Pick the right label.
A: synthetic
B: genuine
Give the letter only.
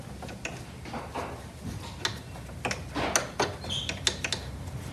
B